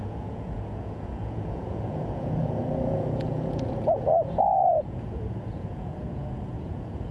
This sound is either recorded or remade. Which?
remade